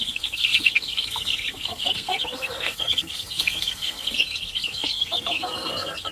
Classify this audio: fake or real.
fake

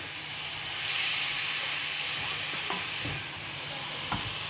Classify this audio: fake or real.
real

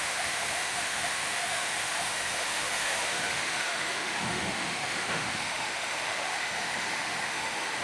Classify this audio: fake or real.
fake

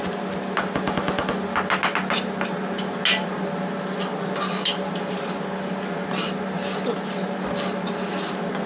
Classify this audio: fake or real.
real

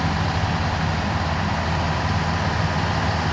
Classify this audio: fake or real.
real